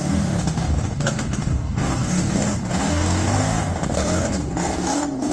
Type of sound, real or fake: fake